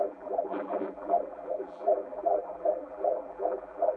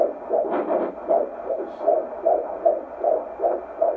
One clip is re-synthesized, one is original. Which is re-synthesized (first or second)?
first